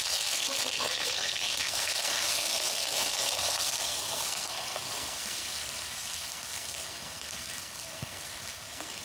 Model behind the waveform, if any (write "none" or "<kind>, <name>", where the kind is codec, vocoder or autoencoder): codec, SNAC